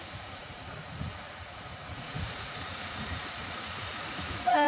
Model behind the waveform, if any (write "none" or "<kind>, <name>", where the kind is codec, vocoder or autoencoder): vocoder, Vocos